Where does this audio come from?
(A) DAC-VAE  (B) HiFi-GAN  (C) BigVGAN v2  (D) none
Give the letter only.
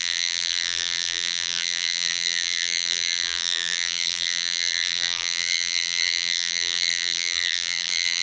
C